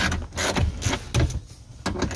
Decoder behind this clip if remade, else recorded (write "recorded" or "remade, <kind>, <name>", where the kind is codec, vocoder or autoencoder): recorded